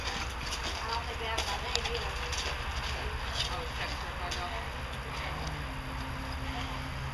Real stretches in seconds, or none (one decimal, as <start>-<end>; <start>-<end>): 0.0-7.1